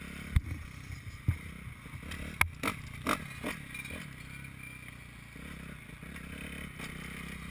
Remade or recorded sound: recorded